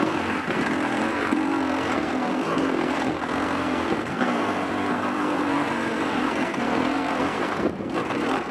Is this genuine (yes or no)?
no